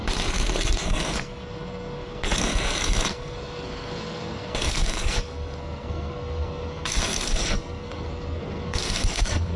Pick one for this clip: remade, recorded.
remade